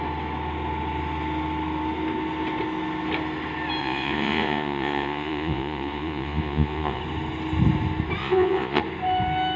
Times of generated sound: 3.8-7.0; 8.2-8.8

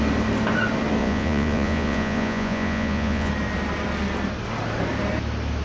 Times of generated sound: 1.0-3.3

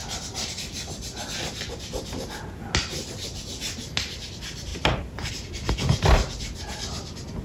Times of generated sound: none

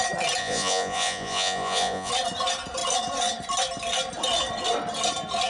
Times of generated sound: 0.4-2.1

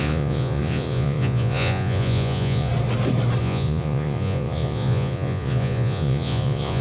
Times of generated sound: 0.0-2.7; 3.4-6.8

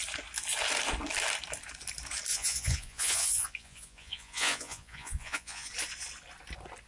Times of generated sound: 2.3-5.7

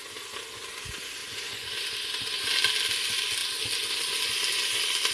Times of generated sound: 1.2-1.7